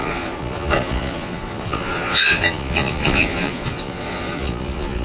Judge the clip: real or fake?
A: fake